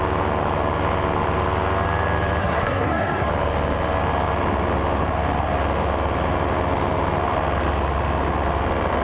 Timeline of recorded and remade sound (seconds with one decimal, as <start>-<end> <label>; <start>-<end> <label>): 0.0-2.4 recorded; 2.4-3.3 remade; 3.3-9.0 recorded